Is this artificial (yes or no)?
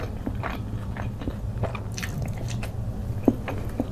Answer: no